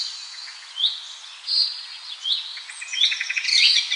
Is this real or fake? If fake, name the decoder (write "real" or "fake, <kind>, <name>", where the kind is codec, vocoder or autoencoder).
fake, vocoder, Vocos